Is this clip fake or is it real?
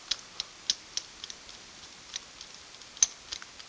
real